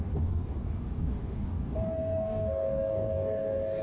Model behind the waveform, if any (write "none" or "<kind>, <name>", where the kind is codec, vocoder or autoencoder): codec, DAC